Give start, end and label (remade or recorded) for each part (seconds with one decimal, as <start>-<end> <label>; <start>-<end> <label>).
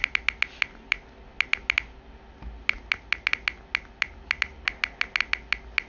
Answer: 0.0-5.9 recorded